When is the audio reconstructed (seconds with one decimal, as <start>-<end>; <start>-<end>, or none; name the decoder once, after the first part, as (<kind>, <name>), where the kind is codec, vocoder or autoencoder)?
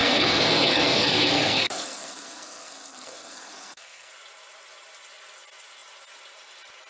0.0-4.1 (codec, SNAC)